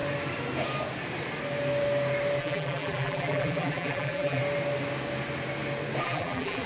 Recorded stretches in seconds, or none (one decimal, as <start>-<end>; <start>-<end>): 0.0-2.4; 4.4-6.0